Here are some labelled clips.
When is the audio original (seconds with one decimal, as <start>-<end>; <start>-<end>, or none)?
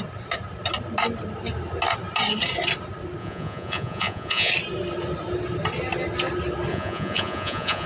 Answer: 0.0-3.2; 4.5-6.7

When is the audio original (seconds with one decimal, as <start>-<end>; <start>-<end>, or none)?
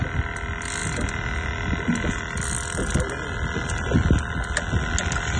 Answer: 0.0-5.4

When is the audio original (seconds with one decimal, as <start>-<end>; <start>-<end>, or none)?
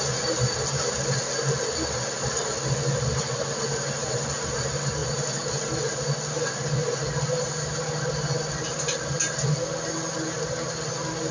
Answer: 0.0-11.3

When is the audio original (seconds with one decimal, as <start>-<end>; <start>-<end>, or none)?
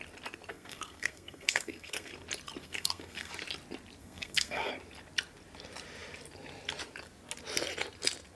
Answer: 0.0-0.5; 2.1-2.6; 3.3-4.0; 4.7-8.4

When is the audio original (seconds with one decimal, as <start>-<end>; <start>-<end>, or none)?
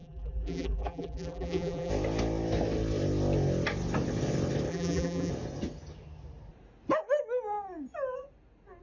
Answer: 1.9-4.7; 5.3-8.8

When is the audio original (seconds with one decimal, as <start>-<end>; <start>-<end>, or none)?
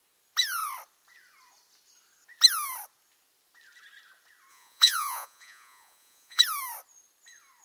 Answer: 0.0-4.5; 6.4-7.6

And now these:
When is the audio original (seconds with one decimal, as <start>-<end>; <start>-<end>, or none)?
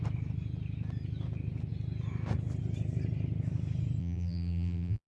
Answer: 0.0-4.0